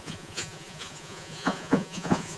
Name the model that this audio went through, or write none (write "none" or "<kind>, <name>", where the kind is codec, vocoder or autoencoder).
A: vocoder, Vocos